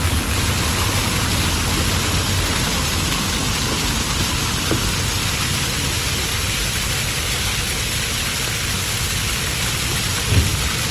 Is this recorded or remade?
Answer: recorded